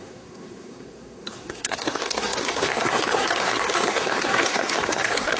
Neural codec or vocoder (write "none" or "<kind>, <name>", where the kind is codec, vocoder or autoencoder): codec, SNAC